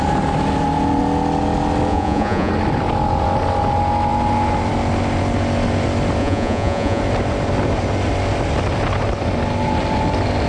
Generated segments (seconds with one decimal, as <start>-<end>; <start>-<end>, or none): 1.9-2.5; 6.2-7.0